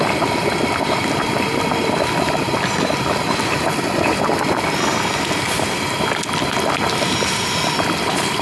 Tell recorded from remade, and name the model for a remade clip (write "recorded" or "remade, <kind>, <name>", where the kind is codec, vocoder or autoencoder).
recorded